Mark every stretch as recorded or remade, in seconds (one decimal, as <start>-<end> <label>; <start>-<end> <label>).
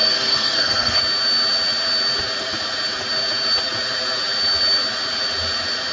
0.0-1.0 remade; 1.0-5.9 recorded